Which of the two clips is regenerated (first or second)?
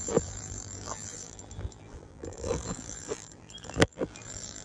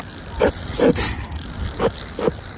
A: first